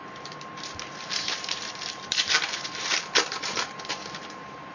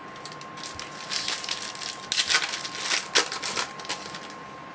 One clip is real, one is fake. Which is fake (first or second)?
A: first